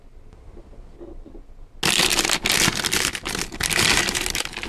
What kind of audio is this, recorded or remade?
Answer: recorded